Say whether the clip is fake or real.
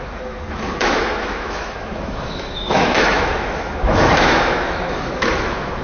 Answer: fake